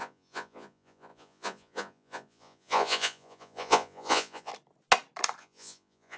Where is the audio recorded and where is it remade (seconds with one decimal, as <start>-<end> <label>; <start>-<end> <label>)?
0.0-4.5 remade; 4.5-5.4 recorded; 5.4-6.2 remade